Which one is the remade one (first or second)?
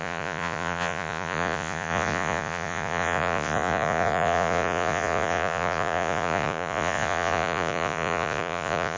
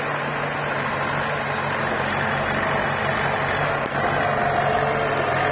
first